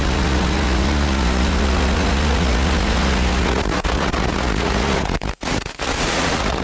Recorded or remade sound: remade